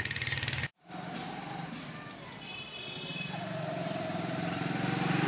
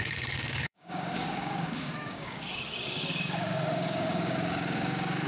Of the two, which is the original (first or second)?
first